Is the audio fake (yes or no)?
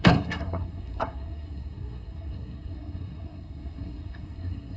yes